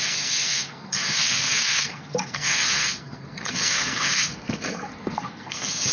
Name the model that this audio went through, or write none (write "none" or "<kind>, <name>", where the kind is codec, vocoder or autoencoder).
codec, SNAC